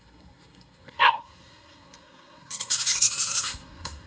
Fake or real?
fake